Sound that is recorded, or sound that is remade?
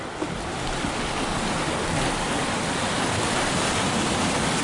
recorded